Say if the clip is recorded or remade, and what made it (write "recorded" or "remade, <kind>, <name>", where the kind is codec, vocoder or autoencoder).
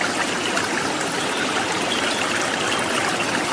recorded